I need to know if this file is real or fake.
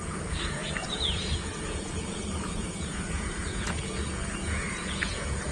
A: fake